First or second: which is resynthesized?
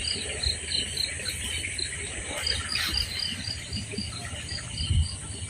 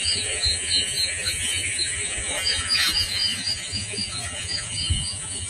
second